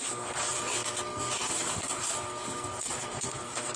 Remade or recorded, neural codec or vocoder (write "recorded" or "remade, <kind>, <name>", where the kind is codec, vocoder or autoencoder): remade, codec, SNAC